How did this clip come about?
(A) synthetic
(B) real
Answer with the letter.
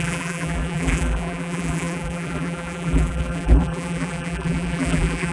A